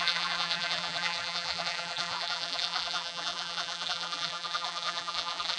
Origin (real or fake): fake